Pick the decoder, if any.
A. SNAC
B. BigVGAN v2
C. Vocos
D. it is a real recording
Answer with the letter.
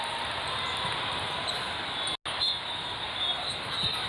D